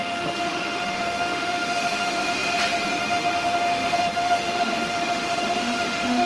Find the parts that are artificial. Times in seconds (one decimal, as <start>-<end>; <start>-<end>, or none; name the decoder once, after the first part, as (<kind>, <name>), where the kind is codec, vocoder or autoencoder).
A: 0.0-2.2 (autoencoder, DAC-VAE); 3.0-6.3